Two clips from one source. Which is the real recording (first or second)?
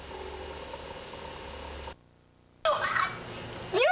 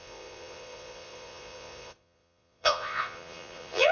first